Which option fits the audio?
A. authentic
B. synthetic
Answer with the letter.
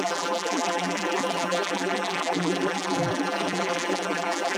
B